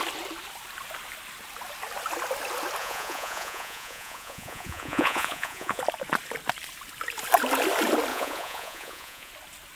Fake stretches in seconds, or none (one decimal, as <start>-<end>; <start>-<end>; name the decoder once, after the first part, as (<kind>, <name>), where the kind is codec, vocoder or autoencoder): 2.8-5.8 (vocoder, Vocos); 8.1-9.3